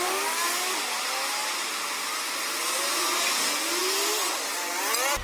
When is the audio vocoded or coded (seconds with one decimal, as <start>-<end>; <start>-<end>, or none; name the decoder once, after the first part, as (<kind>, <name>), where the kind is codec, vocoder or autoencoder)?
none

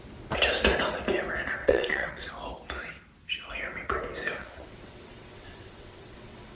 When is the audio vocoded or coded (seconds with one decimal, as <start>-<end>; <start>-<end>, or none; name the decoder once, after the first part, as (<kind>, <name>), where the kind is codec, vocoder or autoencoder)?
1.6-2.3 (vocoder, WaveNeXt); 4.4-6.5

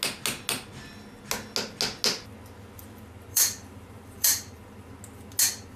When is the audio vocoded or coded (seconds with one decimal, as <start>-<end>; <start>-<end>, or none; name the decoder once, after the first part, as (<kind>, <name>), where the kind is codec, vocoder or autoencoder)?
3.3-4.9 (vocoder, BigVGAN v2)